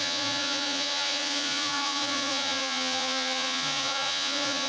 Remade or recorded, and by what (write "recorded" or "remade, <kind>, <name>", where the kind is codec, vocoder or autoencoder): remade, vocoder, Vocos